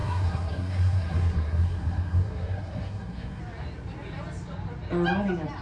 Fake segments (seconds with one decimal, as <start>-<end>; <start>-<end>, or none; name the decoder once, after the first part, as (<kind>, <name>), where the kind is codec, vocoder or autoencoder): 0.0-3.4 (codec, SNAC)